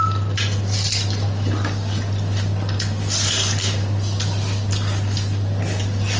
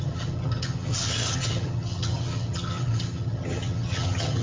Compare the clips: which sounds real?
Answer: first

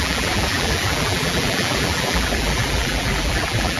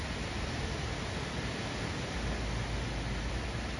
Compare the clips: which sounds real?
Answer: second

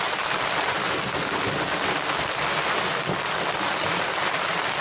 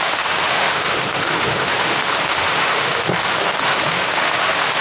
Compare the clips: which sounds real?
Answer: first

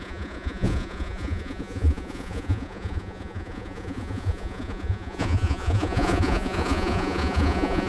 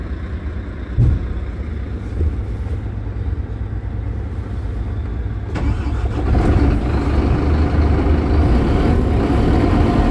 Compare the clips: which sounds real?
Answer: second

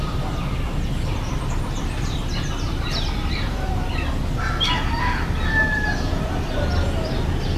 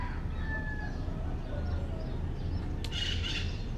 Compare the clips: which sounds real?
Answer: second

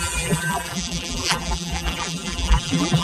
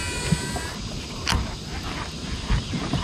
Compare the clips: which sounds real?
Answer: second